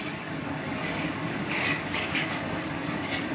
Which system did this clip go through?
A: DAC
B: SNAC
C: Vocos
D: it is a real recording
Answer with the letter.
A